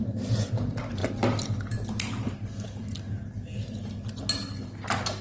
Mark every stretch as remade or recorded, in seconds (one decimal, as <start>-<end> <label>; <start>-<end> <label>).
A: 0.0-5.2 recorded